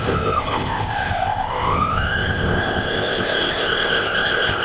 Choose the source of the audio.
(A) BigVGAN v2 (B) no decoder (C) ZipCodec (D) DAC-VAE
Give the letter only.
C